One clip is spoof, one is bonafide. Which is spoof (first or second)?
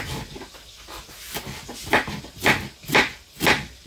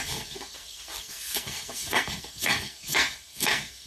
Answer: second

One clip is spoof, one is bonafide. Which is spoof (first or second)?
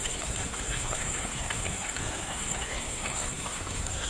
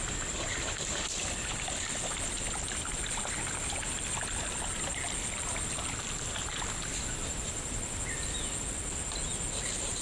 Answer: first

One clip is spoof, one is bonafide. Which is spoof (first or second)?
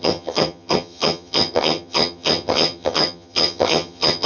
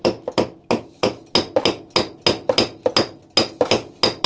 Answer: first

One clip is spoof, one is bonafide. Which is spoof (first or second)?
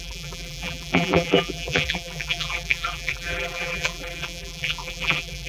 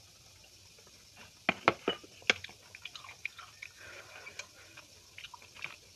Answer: first